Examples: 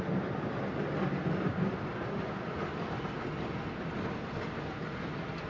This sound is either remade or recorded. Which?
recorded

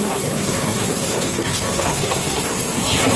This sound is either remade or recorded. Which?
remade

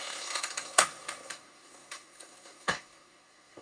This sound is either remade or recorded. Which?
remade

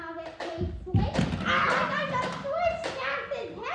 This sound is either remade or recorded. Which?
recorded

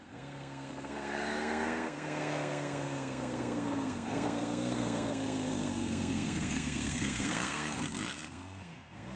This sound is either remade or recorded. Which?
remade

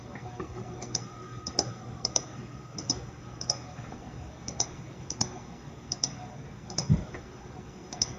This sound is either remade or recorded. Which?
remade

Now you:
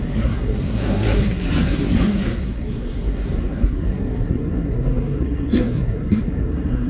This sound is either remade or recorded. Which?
remade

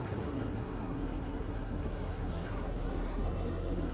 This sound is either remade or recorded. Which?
remade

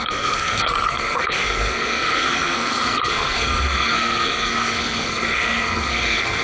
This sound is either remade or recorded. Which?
remade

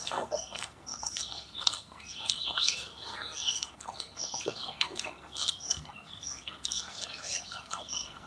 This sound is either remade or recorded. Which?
remade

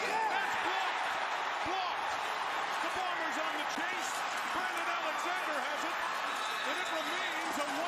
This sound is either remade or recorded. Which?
recorded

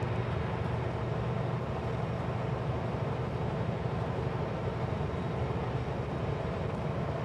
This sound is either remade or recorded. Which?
recorded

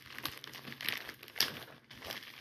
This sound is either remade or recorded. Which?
recorded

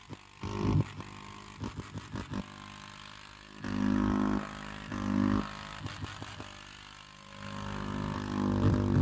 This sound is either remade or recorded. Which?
recorded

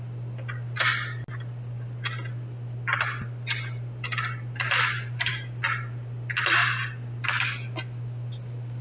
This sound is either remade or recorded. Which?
recorded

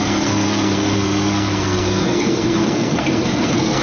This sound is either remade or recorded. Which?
remade